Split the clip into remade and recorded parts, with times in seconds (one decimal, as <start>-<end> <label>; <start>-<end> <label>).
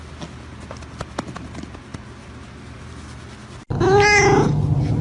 0.0-5.0 recorded